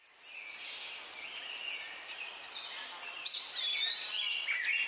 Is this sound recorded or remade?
recorded